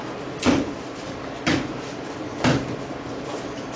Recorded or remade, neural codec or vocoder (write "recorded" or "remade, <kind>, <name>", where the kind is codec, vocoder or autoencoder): recorded